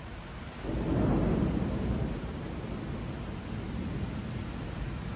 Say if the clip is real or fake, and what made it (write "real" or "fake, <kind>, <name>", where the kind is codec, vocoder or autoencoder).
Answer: real